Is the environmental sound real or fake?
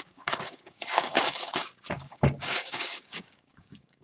fake